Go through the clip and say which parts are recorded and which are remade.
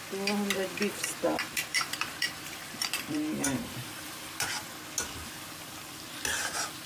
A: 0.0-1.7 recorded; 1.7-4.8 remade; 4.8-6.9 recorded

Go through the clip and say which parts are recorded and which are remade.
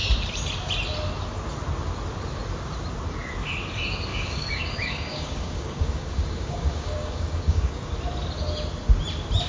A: 0.0-4.1 recorded; 4.1-7.9 remade; 7.9-9.5 recorded